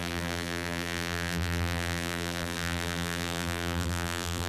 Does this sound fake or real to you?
fake